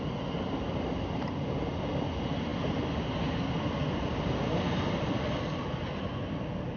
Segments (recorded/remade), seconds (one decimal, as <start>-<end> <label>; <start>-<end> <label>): 0.0-6.8 recorded